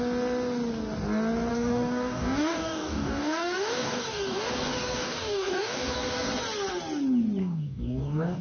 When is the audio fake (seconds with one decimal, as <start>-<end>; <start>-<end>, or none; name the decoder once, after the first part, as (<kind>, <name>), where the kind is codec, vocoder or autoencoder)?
1.5-6.3 (codec, DAC); 7.4-8.4